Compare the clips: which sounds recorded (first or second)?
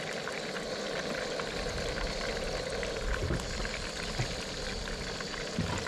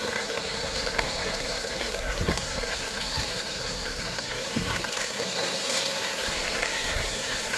first